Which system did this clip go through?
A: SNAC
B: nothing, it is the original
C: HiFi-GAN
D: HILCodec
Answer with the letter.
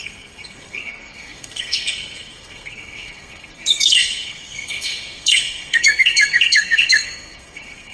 A